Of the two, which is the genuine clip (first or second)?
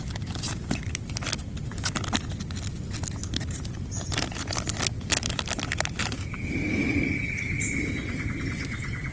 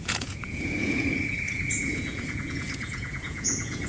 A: first